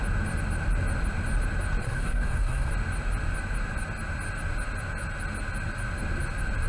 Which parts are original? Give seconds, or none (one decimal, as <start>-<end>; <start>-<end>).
0.0-1.8; 2.7-6.7

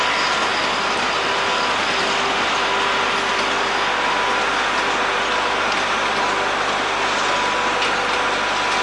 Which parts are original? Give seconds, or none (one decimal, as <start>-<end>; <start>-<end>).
0.0-8.8

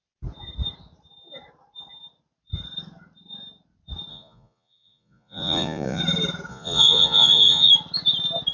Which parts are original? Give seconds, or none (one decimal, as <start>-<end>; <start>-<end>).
0.0-4.1; 6.0-6.5; 7.7-8.5